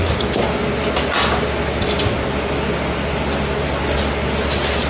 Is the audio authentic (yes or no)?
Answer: yes